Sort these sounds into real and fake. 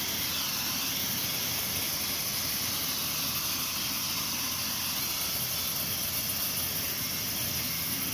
real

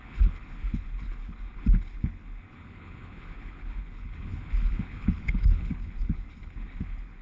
fake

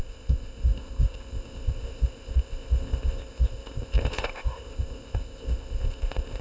fake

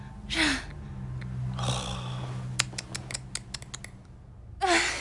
real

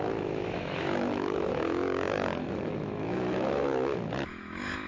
fake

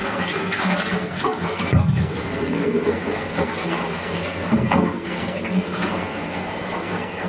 fake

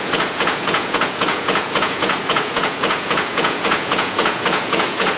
fake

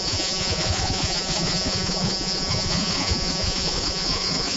fake